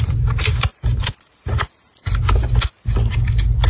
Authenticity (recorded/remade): recorded